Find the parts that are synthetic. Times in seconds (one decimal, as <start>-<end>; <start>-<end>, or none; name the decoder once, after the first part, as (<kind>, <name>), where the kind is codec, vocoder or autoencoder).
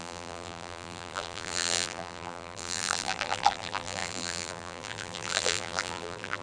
0.0-6.4 (vocoder, BigVGAN v2)